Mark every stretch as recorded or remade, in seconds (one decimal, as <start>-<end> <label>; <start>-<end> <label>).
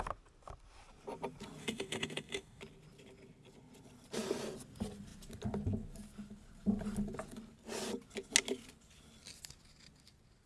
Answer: 0.0-1.6 recorded; 1.6-2.6 remade; 2.6-10.5 recorded